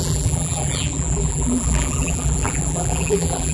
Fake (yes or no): yes